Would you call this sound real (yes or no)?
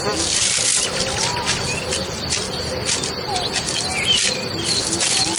yes